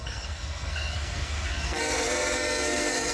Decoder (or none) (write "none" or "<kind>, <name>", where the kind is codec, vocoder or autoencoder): codec, SNAC